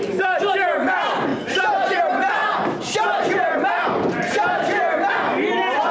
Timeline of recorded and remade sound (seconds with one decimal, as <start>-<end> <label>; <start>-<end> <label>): 0.0-5.9 recorded